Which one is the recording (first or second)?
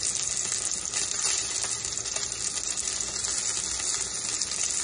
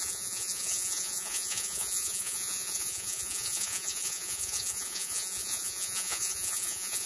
first